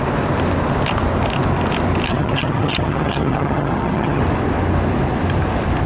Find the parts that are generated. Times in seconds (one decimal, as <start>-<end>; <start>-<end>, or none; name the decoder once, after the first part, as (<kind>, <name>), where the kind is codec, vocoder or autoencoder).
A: 2.1-4.2 (vocoder, HiFi-GAN)